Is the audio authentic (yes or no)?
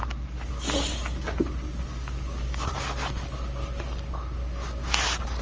yes